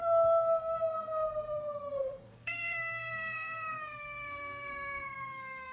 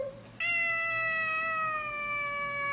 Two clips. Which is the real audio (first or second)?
second